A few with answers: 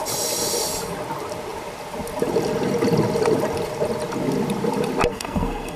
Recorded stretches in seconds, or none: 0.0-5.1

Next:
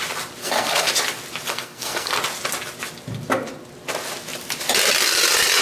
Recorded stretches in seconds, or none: 0.0-0.4; 0.9-1.5; 2.2-5.6

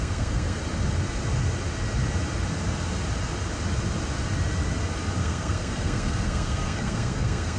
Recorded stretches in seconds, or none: 0.6-5.2

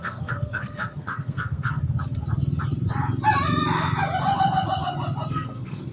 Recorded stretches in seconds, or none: 1.8-5.3

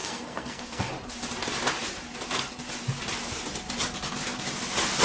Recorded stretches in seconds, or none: 0.9-5.0

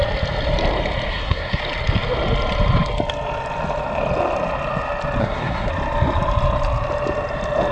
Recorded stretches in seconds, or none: 0.0-1.1; 1.6-5.2; 5.7-7.7